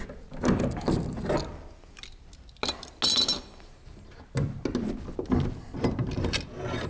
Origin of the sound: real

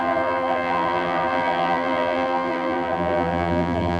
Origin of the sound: fake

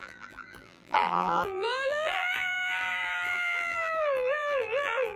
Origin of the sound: fake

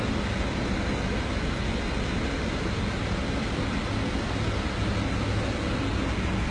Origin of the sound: real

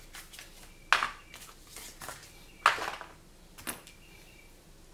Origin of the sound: real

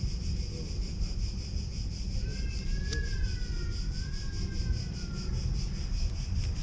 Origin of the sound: real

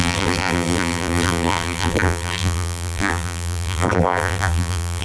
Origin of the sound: fake